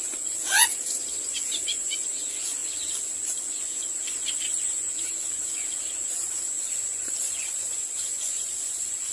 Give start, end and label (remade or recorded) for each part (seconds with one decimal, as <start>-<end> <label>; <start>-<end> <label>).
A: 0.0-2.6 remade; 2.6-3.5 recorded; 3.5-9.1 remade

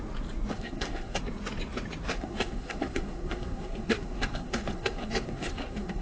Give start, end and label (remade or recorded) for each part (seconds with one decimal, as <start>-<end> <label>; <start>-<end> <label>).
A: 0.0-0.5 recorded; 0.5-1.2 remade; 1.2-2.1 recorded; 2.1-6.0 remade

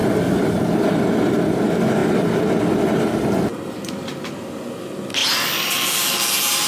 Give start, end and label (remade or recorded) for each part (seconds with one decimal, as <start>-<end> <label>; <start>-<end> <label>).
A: 0.0-6.7 recorded